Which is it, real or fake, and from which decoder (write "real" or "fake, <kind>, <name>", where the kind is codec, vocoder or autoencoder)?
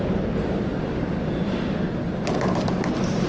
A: real